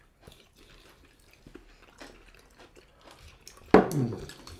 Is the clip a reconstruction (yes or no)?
no